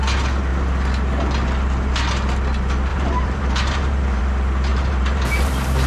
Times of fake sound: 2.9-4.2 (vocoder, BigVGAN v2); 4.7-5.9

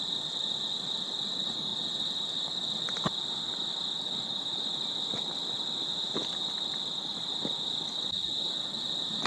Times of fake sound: none

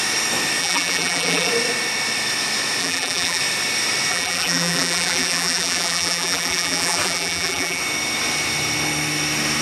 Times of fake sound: 0.6-1.5 (vocoder, BigVGAN v2); 2.8-3.4; 4.1-7.8